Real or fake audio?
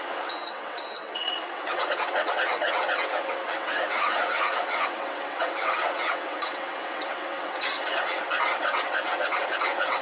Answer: fake